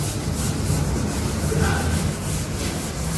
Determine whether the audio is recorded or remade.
recorded